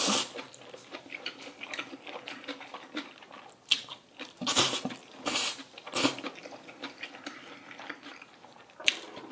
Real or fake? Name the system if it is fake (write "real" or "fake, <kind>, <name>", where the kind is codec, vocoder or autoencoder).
fake, vocoder, BigVGAN v2